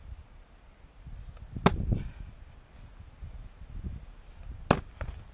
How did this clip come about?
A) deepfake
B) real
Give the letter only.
B